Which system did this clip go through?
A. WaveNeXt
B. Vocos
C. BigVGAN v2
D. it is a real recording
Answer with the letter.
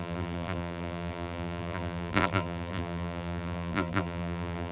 C